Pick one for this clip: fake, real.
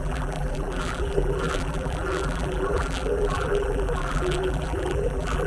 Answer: fake